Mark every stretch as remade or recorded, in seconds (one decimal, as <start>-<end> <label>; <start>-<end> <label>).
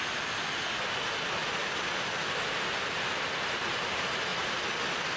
0.0-5.2 recorded